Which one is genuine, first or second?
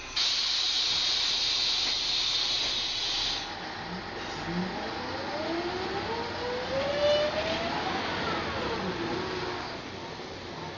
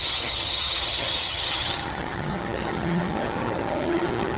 first